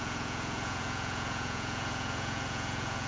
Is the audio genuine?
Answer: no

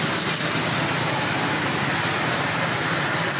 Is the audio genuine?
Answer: yes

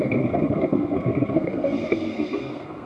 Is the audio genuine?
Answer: no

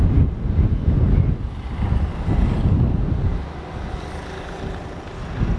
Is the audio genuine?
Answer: yes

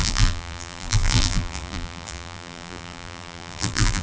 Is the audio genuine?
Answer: no